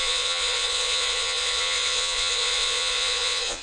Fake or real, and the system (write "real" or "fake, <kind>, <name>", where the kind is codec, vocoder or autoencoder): fake, vocoder, Vocos